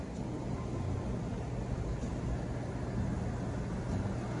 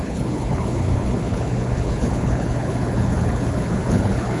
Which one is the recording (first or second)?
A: first